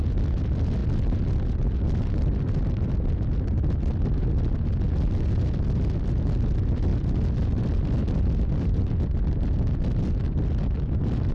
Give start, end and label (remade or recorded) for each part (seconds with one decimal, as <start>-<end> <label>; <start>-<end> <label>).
0.0-6.9 recorded; 6.9-8.8 remade; 8.8-11.3 recorded